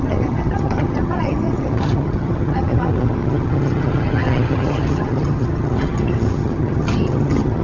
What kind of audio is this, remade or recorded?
remade